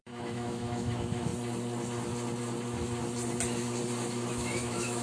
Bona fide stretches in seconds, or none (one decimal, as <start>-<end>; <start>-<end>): 1.3-4.3